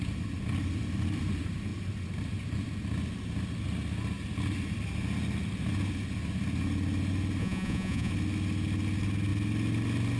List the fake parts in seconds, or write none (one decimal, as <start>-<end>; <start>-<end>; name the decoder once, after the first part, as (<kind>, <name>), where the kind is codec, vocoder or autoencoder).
7.4-8.1 (vocoder, Vocos)